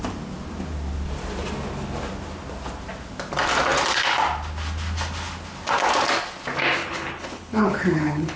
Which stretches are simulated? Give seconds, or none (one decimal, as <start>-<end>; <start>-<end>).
6.8-8.4